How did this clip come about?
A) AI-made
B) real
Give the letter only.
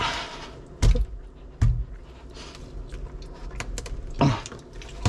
B